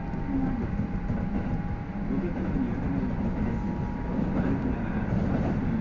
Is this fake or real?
real